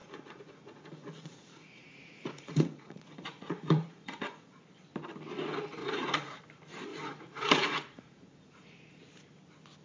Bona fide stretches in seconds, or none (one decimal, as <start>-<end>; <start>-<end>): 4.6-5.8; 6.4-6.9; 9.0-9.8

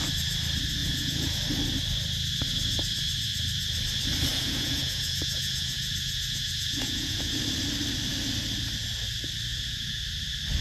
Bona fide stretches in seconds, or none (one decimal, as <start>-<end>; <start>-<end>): 0.0-0.8; 1.4-4.3; 7.4-9.5; 10.0-10.6

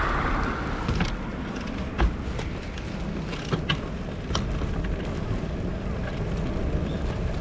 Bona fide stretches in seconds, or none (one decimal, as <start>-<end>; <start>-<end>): 0.0-7.4

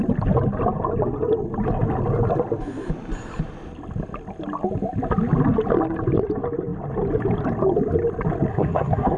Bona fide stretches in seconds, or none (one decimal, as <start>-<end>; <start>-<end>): 0.0-8.5

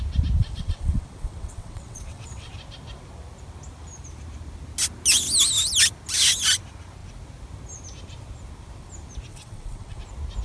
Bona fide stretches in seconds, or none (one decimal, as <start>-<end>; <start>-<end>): 0.0-0.4; 2.5-9.3; 10.0-10.4